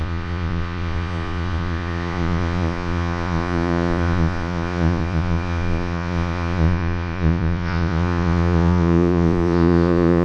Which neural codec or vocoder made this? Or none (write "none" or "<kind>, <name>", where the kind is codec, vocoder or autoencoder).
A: vocoder, Vocos